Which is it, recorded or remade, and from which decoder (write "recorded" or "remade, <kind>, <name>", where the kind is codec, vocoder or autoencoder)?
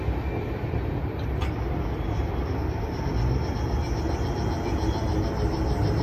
recorded